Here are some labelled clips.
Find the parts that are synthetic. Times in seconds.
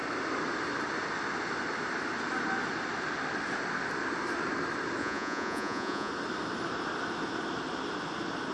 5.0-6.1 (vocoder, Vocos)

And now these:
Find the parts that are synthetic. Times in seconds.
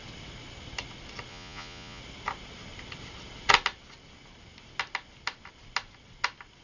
1.3-2.0 (vocoder, Vocos)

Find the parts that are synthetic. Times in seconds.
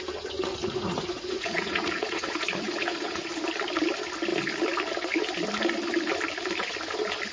0.6-3.4 (vocoder, Vocos)